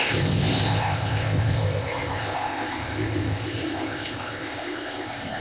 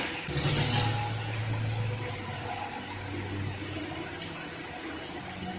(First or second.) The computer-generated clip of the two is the first